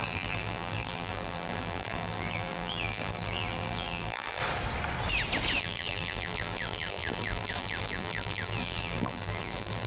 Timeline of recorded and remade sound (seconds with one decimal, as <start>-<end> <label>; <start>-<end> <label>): 0.0-4.4 remade; 4.4-5.6 recorded; 5.6-9.9 remade